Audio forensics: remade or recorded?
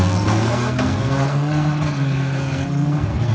remade